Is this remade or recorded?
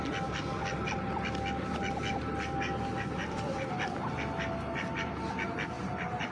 recorded